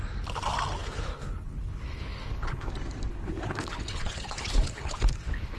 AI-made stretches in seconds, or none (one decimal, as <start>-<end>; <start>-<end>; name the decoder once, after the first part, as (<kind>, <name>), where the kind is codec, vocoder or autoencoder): 0.8-2.7 (codec, HILCodec); 3.1-5.6